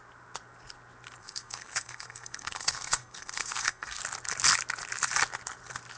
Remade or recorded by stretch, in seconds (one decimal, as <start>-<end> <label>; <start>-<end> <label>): 0.0-1.2 recorded; 1.2-4.0 remade; 4.0-6.0 recorded